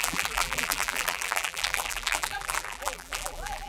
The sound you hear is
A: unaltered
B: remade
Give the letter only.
B